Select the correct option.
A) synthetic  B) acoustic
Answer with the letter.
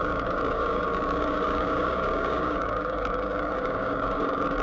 A